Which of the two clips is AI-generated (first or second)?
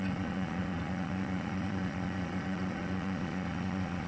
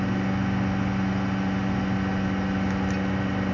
first